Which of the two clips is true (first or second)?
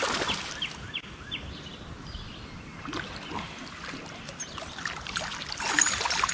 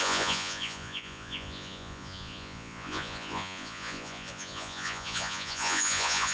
first